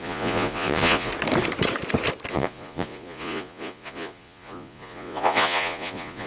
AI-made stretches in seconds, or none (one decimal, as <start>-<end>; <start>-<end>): 0.0-1.1; 2.3-6.3